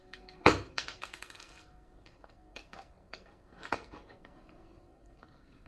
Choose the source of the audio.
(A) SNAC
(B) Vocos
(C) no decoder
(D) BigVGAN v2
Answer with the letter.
A